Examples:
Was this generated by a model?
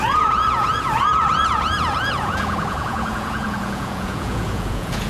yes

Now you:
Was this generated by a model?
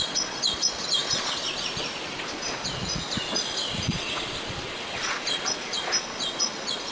yes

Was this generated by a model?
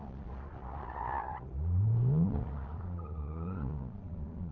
yes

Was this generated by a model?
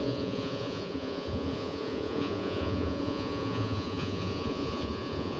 yes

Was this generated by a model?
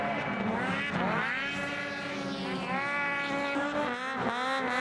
no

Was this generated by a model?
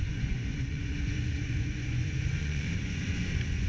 yes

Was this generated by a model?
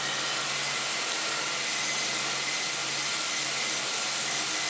no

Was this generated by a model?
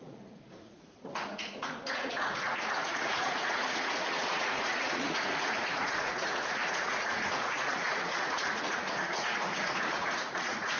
yes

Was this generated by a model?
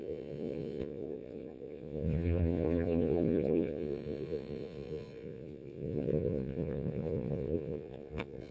yes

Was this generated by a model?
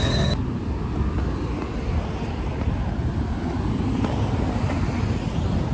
no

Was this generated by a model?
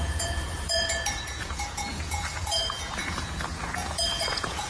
yes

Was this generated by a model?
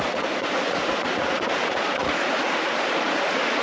yes